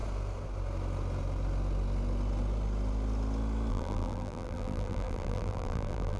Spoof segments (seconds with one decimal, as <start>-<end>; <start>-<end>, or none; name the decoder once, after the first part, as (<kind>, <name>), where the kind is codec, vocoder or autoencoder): 3.7-6.2 (vocoder, BigVGAN v2)